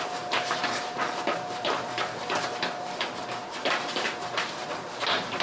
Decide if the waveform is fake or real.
fake